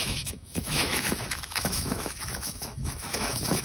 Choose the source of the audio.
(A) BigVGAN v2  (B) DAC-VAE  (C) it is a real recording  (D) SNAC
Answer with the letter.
B